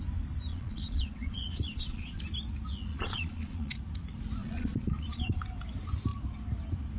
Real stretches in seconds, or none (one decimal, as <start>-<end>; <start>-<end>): 0.0-0.5; 2.2-2.9; 3.8-4.4; 5.4-7.0